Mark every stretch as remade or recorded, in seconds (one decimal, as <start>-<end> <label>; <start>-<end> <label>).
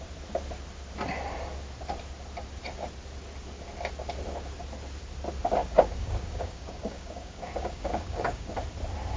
0.0-5.6 recorded; 5.6-8.5 remade; 8.5-9.2 recorded